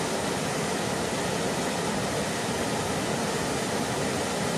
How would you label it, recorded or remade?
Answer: recorded